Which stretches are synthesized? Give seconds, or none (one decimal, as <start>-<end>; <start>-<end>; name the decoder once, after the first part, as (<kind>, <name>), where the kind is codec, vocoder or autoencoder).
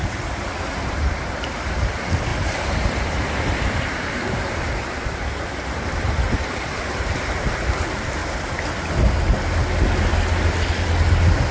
0.0-8.2 (vocoder, BigVGAN v2)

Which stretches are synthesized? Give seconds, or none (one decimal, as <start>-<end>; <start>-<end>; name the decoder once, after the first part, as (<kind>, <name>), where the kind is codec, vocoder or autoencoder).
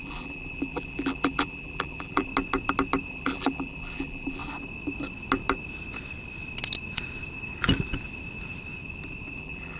0.0-2.3 (vocoder, BigVGAN v2); 3.1-4.4; 9.4-9.8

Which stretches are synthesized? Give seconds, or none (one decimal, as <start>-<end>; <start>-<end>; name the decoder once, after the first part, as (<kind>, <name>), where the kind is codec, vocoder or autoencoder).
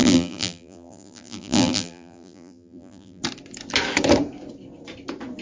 0.0-3.2 (vocoder, BigVGAN v2)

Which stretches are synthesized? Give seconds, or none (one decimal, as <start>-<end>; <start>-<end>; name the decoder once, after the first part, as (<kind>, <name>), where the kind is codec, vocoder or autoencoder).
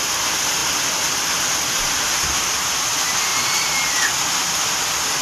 3.3-3.9 (vocoder, BigVGAN v2)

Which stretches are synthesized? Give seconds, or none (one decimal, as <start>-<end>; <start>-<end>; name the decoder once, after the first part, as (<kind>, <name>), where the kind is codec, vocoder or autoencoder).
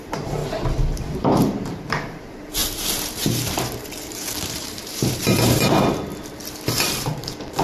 0.0-0.4 (vocoder, BigVGAN v2); 1.0-6.1; 6.7-7.6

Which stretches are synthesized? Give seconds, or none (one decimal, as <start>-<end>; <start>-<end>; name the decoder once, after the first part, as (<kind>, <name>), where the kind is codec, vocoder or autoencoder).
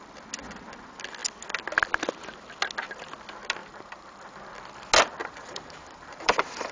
3.6-4.4 (vocoder, BigVGAN v2); 5.2-6.7